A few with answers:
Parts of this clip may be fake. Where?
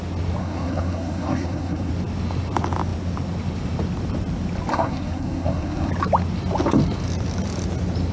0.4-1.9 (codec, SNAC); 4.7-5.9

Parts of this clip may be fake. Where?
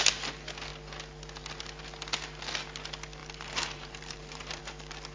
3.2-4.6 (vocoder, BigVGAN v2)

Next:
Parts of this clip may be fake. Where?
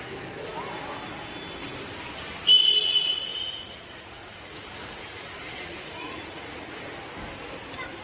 3.3-6.9 (vocoder, Vocos)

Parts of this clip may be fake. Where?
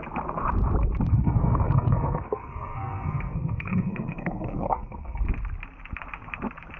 1.1-5.2 (codec, SNAC)